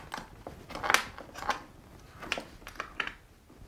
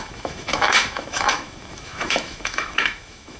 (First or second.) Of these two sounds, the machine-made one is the second